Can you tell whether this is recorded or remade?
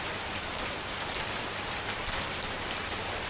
remade